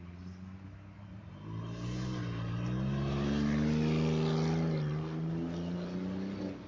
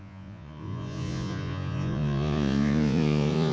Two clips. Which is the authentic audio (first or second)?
first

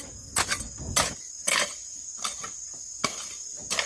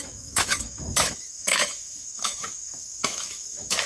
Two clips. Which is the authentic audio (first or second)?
first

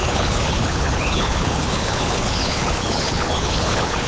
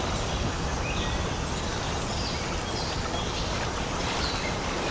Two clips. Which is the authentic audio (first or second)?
second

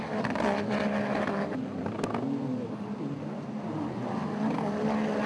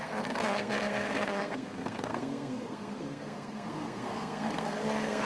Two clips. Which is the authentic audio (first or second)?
first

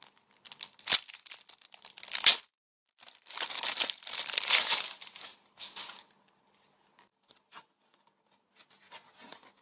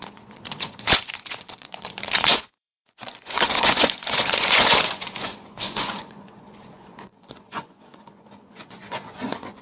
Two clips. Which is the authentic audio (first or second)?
first